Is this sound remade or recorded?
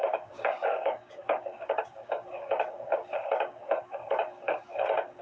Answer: remade